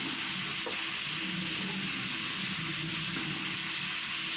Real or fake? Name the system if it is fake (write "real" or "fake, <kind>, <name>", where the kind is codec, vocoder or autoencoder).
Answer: real